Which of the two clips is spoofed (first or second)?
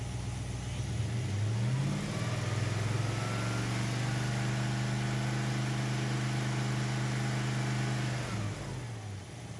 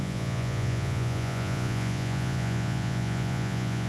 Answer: second